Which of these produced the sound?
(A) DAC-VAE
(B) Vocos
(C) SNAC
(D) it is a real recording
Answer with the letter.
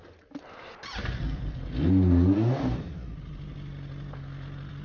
D